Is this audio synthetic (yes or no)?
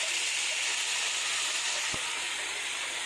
no